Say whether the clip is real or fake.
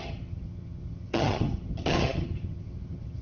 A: fake